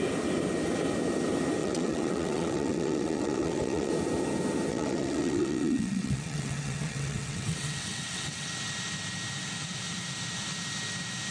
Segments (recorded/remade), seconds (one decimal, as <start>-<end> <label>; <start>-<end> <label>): 0.0-1.6 recorded; 1.6-3.9 remade; 3.9-4.7 recorded; 4.7-8.5 remade; 8.5-11.3 recorded